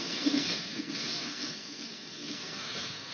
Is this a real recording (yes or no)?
no